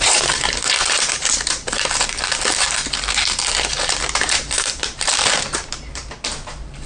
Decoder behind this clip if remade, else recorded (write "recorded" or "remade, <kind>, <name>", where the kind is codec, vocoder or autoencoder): remade, vocoder, BigVGAN v2